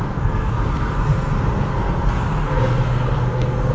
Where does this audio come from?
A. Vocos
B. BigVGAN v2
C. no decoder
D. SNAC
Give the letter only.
D